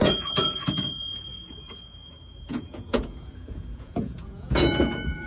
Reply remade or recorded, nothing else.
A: remade